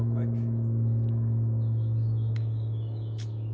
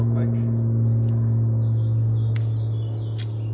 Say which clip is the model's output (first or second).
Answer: first